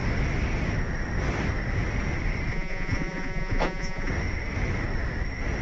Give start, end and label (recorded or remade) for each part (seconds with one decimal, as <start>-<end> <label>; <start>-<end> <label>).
0.0-2.5 recorded; 2.5-4.1 remade; 4.1-5.6 recorded

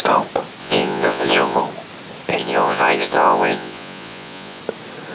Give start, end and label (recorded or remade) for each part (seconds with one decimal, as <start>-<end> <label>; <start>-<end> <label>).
0.0-0.6 recorded; 0.6-1.6 remade; 1.6-2.4 recorded; 2.4-4.6 remade; 4.6-5.1 recorded